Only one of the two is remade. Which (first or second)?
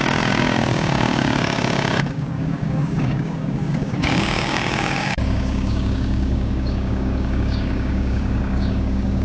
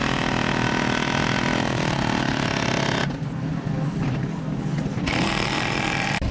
first